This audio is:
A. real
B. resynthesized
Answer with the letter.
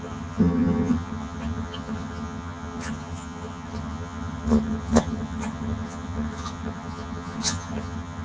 B